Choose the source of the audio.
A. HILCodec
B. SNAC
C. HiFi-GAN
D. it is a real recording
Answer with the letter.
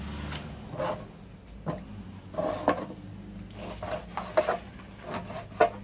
D